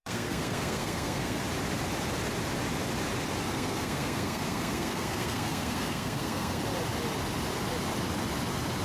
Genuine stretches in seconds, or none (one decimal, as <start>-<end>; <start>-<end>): 1.4-3.4; 6.6-8.8